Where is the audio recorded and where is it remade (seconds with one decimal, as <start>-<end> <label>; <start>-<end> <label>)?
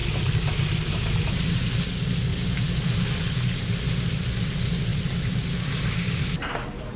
0.0-1.7 remade; 1.7-2.3 recorded; 2.3-3.7 remade; 3.7-4.9 recorded; 4.9-5.9 remade; 5.9-7.0 recorded